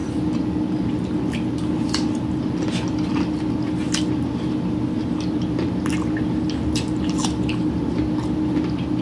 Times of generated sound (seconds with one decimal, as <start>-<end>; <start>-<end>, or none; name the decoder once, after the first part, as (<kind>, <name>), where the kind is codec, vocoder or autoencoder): none